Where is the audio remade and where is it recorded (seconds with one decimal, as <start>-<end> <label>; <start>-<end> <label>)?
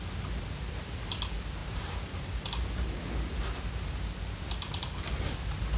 0.0-1.6 recorded; 1.6-2.2 remade; 2.2-5.8 recorded